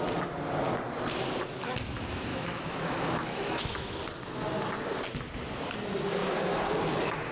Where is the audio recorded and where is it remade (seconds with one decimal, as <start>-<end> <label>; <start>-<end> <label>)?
0.0-2.3 recorded; 2.3-4.0 remade; 4.0-7.3 recorded